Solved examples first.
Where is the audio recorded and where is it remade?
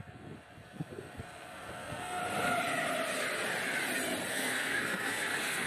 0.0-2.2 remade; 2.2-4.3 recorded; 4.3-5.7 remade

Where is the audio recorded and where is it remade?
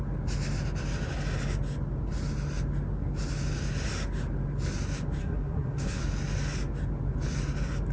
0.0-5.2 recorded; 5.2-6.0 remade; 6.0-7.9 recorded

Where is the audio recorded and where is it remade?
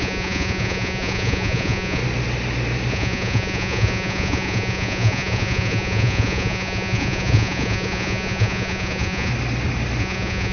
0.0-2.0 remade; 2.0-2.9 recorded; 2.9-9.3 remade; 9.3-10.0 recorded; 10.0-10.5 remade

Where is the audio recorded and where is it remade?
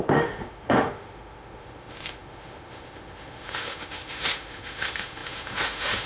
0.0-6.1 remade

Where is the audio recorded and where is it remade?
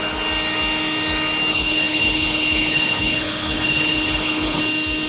0.0-1.5 recorded; 1.5-4.6 remade; 4.6-5.1 recorded